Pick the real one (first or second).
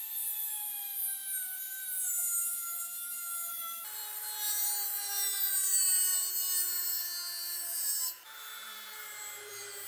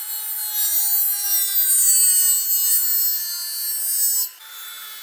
second